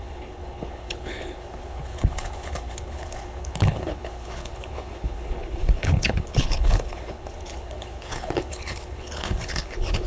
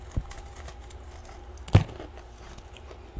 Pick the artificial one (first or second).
first